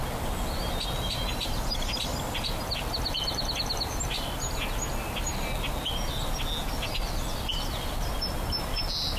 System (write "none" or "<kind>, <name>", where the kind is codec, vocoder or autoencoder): none